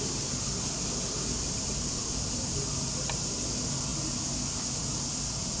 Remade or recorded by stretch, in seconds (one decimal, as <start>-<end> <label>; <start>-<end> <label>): 0.0-5.6 recorded